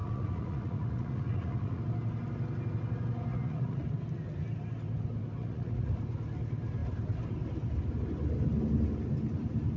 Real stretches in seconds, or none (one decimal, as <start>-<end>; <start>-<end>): 1.8-3.3; 3.9-5.4; 6.0-9.8